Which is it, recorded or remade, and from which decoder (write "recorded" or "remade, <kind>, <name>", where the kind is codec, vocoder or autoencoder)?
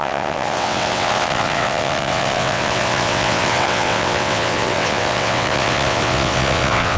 remade, vocoder, WaveNeXt